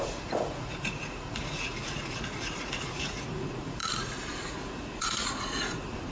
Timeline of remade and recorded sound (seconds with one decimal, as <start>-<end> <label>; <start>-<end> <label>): 0.0-6.1 remade